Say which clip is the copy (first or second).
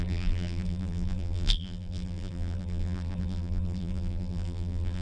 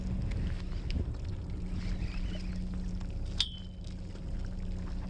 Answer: first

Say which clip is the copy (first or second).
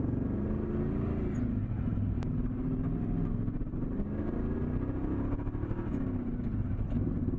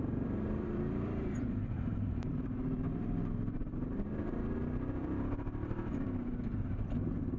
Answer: second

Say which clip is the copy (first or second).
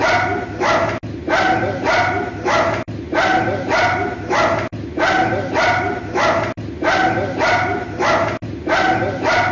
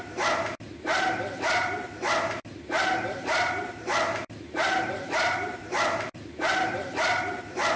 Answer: second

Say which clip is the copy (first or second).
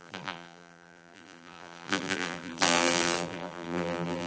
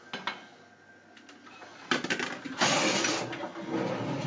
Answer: first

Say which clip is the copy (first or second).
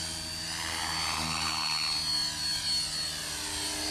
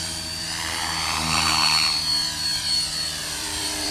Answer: second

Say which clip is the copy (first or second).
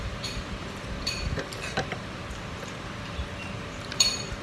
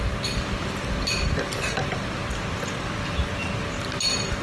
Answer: first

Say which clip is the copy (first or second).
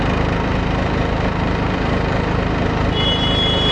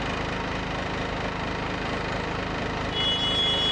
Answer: first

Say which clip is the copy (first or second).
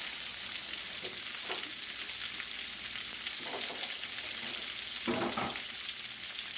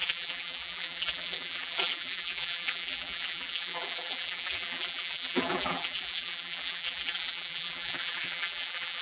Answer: second